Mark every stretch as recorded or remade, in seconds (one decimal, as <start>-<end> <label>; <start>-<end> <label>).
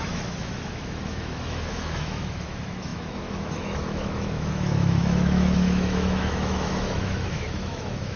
0.0-8.2 remade